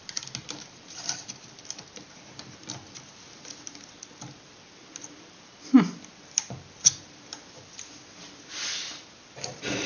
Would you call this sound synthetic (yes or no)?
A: no